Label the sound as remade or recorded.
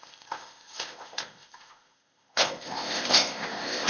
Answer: remade